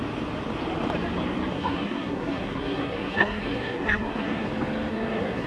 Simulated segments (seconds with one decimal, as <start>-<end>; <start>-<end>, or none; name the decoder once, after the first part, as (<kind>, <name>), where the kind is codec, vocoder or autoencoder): 1.5-4.5 (codec, SNAC); 4.9-5.5